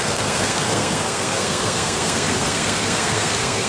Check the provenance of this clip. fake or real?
fake